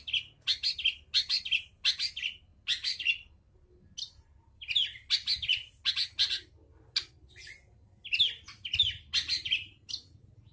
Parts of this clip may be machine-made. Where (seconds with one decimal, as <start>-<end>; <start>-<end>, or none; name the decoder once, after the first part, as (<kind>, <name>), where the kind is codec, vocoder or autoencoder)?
none